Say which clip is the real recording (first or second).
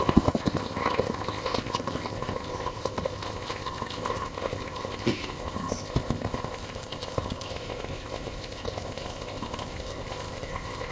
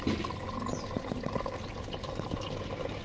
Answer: second